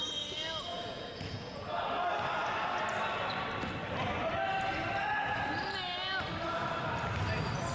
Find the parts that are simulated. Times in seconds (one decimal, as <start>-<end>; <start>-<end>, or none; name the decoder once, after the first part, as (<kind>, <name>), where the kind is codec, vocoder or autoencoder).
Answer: 0.7-1.8 (vocoder, Vocos)